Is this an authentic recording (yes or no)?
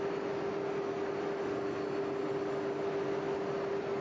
yes